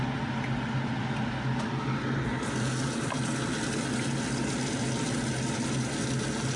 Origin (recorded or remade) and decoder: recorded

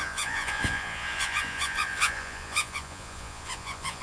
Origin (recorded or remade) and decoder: remade, vocoder, Vocos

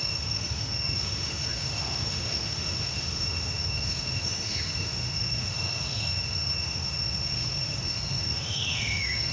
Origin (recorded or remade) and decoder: remade, autoencoder, DAC-VAE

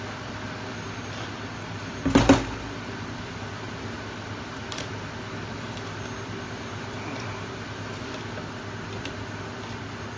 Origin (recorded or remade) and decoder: recorded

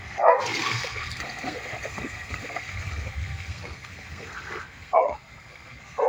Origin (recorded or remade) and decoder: remade, codec, SNAC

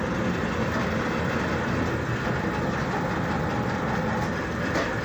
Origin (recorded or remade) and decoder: recorded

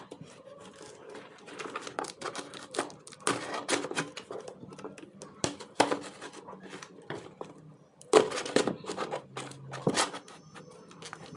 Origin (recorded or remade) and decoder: recorded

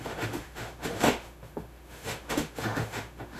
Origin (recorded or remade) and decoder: remade, autoencoder, DAC-VAE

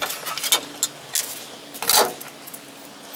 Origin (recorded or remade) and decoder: recorded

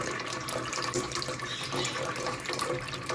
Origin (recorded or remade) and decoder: remade, vocoder, BigVGAN v2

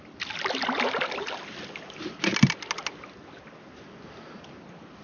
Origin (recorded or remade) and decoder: recorded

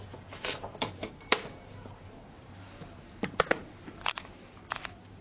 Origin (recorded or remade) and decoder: remade, vocoder, BigVGAN v2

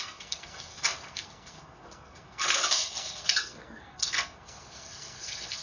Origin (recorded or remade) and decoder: remade, codec, SNAC